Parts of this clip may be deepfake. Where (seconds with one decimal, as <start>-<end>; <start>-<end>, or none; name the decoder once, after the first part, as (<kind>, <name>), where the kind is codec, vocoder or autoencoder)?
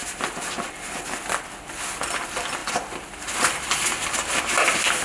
none